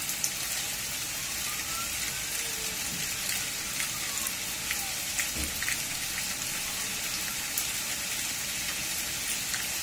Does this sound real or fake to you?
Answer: real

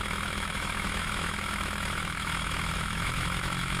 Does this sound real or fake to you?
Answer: fake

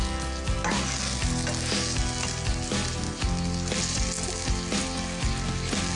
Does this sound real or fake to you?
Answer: real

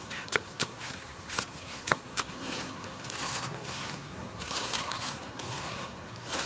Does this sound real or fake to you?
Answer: fake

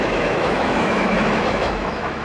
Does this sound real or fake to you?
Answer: fake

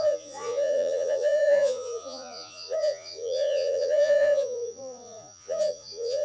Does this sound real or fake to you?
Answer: fake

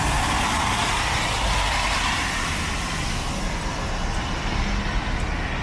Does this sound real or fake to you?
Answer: real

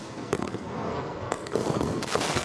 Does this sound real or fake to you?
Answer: fake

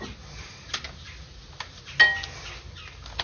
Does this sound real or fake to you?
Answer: real